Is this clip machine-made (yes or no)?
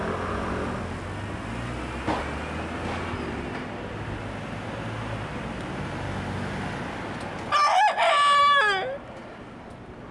no